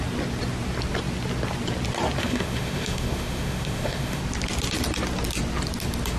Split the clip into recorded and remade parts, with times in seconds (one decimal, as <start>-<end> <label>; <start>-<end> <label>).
0.0-2.2 recorded; 2.2-4.2 remade; 4.2-6.2 recorded